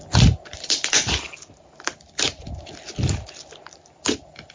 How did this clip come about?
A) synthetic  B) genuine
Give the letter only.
B